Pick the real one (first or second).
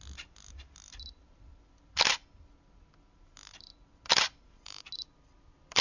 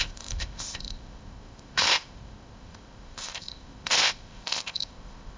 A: first